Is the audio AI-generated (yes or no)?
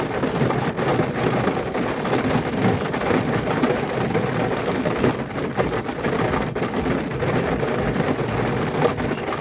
no